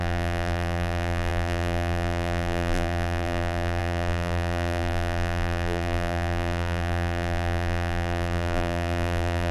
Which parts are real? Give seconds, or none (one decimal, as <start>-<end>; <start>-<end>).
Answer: none